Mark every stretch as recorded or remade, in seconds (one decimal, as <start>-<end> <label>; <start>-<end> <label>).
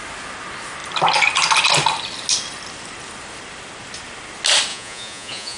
0.0-4.7 recorded; 4.7-5.6 remade